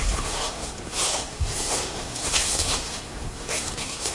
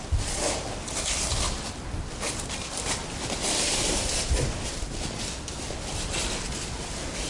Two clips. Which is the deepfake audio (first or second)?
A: first